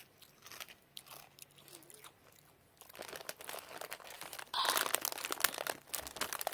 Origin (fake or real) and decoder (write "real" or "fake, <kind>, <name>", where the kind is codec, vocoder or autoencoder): real